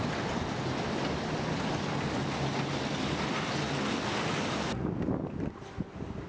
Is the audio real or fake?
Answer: real